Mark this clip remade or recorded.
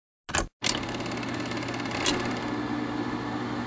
recorded